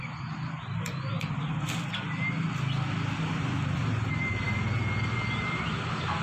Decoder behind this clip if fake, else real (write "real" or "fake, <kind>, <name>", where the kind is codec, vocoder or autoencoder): real